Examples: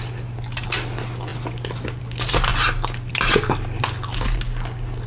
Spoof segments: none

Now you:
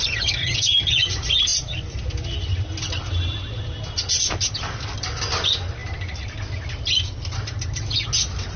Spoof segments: 0.4-1.1 (vocoder, HiFi-GAN)

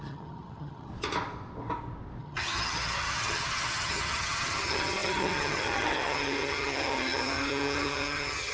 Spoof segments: 0.0-0.9 (vocoder, HiFi-GAN); 2.2-8.5

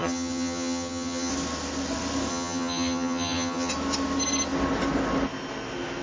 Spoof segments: 0.0-1.3 (vocoder, HiFi-GAN); 2.3-3.7

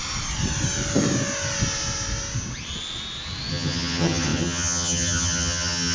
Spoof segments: 3.5-5.9 (vocoder, HiFi-GAN)

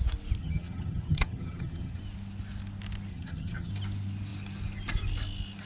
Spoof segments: 0.4-2.0 (vocoder, HiFi-GAN); 3.1-3.7